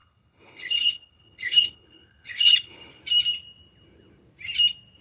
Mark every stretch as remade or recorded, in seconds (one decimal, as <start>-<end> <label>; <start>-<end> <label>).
0.0-3.0 remade; 3.0-5.0 recorded